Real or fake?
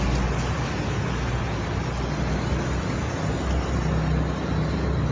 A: real